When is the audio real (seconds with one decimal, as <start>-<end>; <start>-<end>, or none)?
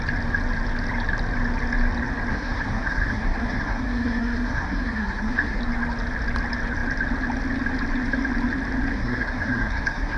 0.0-2.3; 5.6-8.9